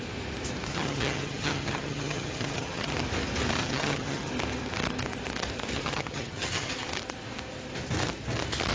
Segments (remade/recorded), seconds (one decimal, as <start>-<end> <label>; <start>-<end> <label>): 0.0-0.7 recorded; 0.7-2.9 remade; 2.9-3.6 recorded; 3.6-4.3 remade; 4.3-5.7 recorded; 5.7-6.7 remade; 6.7-8.7 recorded